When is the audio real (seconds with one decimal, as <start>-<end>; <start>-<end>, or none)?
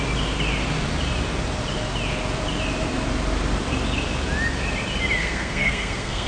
0.0-5.2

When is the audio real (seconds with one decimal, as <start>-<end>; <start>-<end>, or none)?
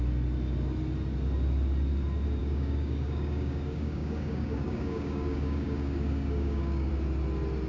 0.0-2.4; 6.9-7.7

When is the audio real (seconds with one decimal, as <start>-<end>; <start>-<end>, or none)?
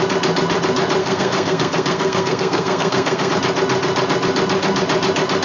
0.0-1.0; 3.3-5.4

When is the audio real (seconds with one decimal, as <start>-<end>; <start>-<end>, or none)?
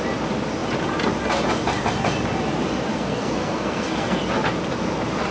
0.0-2.9; 4.2-5.3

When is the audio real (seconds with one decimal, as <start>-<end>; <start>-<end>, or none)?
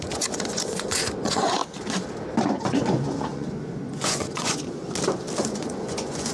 1.6-2.5; 4.8-5.4